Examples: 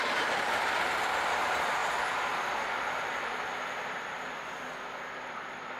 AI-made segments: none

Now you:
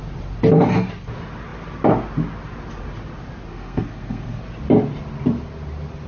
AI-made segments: 3.5-4.4 (codec, SNAC)

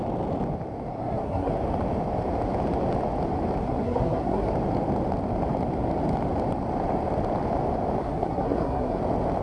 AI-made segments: 0.9-1.5 (codec, SNAC); 3.6-4.5; 8.0-9.0